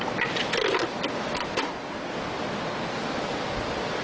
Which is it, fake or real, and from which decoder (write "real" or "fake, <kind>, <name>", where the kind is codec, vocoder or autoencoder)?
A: real